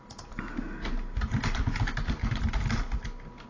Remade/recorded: recorded